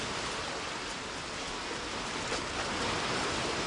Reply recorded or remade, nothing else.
recorded